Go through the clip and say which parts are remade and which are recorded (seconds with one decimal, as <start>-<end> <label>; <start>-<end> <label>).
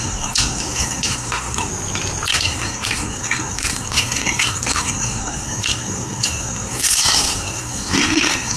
0.0-1.7 remade; 1.7-2.3 recorded; 2.3-8.6 remade